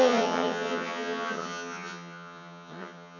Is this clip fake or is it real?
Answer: fake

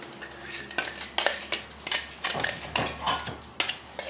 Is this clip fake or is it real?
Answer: real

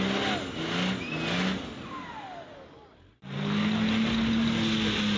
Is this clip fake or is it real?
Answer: real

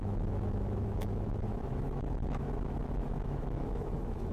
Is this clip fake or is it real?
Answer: fake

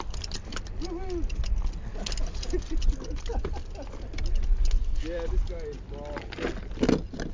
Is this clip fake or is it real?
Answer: real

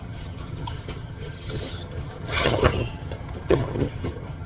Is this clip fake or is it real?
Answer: fake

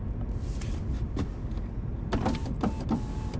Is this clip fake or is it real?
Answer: real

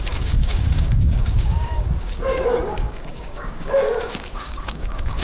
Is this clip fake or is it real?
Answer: fake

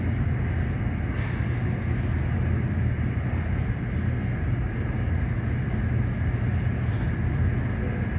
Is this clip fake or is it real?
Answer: real